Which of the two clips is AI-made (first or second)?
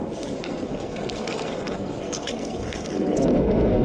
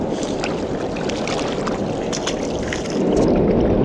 first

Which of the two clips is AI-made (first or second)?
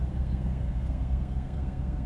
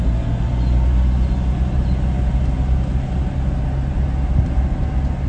first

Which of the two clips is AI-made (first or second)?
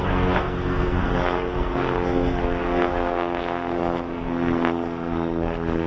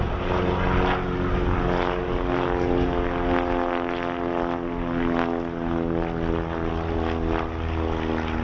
first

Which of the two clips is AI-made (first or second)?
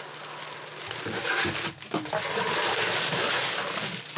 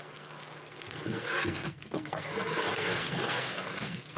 second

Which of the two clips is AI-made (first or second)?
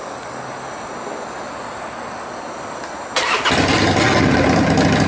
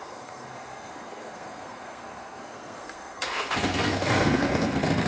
second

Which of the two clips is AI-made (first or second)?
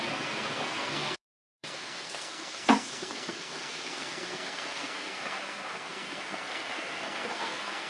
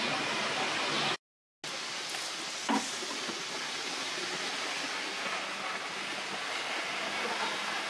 first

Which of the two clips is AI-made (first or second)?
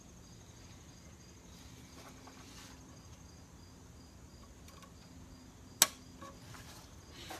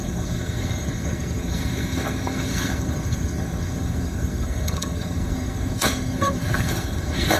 second